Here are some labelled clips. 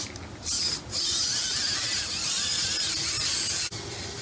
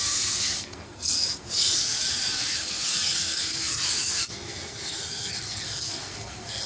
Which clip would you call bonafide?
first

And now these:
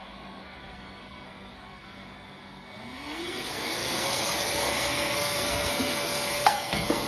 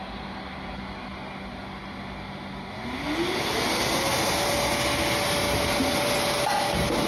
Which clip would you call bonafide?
second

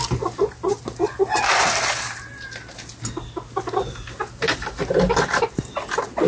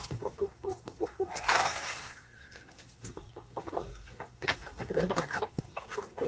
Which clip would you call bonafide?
first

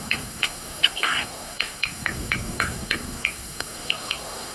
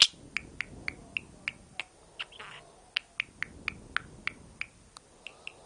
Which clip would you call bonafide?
second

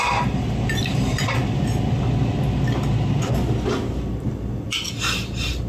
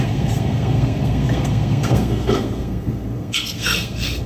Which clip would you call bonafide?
first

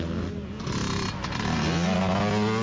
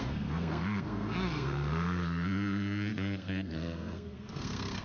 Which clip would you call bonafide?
first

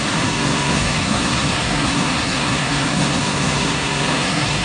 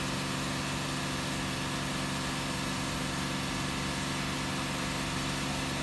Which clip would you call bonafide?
second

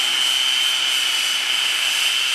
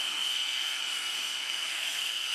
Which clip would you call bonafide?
first